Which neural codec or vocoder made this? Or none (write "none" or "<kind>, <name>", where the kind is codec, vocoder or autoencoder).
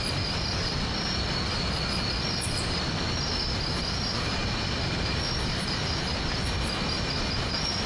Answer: none